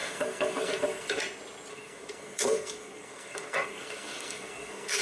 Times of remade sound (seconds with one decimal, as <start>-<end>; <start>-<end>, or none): 0.0-1.2; 1.7-5.0